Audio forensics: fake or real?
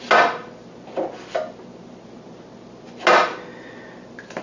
real